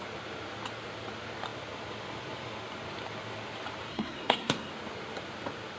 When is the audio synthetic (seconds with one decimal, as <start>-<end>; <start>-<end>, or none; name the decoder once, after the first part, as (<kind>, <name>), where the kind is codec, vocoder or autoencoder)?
3.9-4.7 (codec, SNAC)